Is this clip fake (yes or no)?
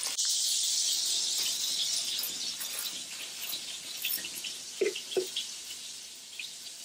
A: no